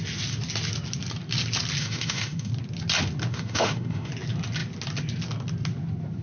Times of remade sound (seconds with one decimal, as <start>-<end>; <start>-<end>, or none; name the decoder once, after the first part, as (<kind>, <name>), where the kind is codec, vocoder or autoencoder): 1.8-2.5 (autoencoder, DAC-VAE); 3.3-4.1